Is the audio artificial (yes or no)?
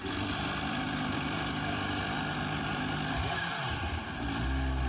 yes